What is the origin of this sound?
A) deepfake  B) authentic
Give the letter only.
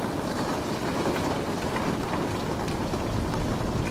B